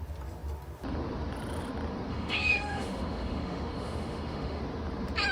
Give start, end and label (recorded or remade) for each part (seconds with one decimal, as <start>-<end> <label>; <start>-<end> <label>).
0.0-2.1 recorded; 2.1-4.6 remade; 4.6-5.3 recorded